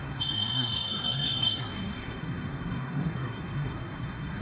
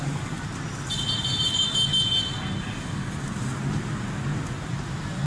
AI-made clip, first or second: first